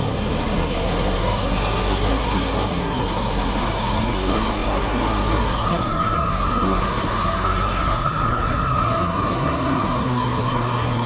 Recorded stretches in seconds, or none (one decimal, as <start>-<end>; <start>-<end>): none